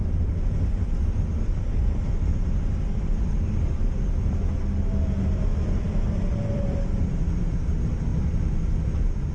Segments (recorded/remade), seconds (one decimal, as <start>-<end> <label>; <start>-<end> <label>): 0.0-4.0 remade; 4.0-5.5 recorded; 5.5-7.4 remade; 7.4-8.1 recorded; 8.1-9.3 remade